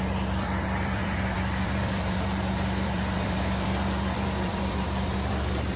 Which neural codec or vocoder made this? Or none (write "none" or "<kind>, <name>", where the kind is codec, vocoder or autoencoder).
vocoder, BigVGAN v2